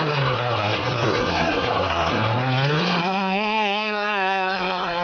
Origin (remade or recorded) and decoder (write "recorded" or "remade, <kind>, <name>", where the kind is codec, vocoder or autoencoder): remade, codec, SNAC